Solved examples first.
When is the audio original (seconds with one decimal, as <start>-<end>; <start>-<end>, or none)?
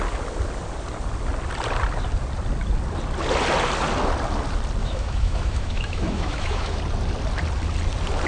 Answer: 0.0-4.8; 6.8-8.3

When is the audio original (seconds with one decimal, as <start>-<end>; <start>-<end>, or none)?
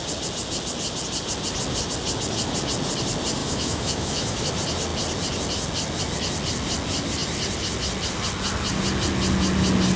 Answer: 0.0-3.4; 4.5-10.0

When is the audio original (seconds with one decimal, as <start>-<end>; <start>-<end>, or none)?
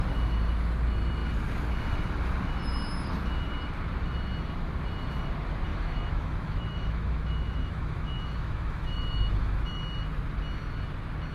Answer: 0.0-5.7; 9.8-11.3